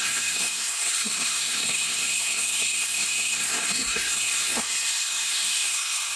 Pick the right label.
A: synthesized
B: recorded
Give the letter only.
A